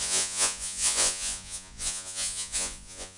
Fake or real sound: fake